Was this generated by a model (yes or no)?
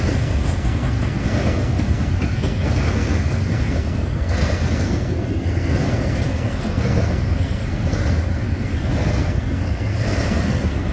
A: yes